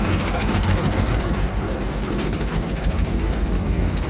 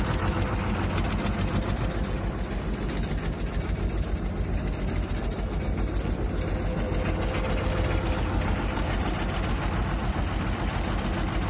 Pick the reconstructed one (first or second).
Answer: first